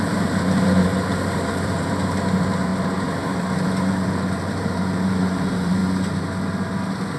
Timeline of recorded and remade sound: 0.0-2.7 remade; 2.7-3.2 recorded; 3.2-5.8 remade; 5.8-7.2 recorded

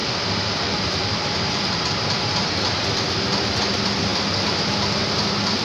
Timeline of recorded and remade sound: 0.0-2.8 remade; 2.8-5.6 recorded

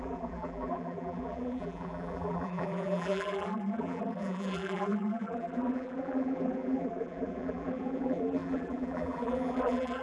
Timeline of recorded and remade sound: 0.0-10.0 remade